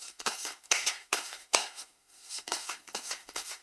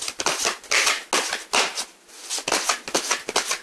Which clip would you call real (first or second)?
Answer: second